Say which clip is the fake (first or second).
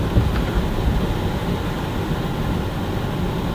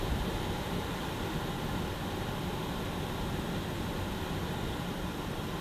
second